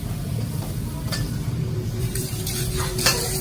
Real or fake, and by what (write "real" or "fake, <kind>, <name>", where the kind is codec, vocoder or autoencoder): fake, vocoder, BigVGAN v2